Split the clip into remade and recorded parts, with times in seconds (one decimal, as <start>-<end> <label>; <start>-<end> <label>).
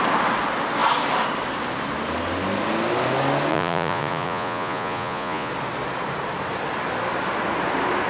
0.0-3.5 recorded; 3.5-5.5 remade; 5.5-8.1 recorded